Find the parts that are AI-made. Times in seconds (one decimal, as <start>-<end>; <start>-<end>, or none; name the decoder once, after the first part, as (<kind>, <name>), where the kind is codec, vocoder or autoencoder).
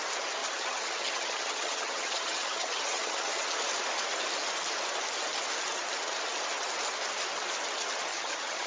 0.4-3.4 (vocoder, HiFi-GAN); 8.1-8.7